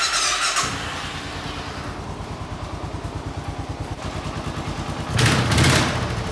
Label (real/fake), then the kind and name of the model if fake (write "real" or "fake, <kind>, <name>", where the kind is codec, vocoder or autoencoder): real